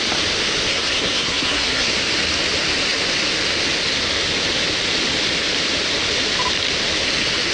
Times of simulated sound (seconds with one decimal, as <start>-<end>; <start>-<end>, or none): 0.7-1.9

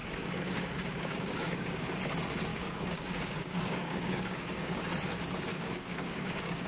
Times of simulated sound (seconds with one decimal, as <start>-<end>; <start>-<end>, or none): 0.0-1.9; 2.5-4.8; 5.5-6.7

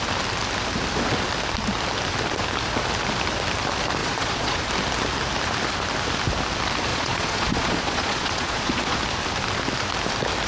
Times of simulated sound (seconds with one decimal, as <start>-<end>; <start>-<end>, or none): 4.0-4.7; 6.9-9.0

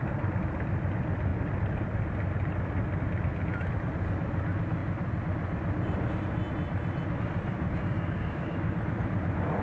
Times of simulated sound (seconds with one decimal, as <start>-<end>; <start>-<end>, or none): 7.5-8.7

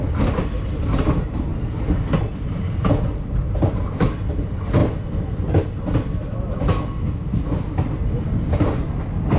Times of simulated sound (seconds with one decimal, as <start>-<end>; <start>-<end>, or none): none

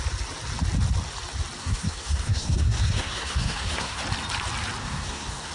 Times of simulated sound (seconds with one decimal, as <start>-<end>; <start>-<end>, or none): 1.6-4.0; 4.8-5.5